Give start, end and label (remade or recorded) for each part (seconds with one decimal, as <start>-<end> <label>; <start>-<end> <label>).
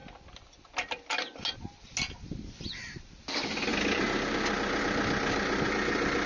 0.0-6.3 recorded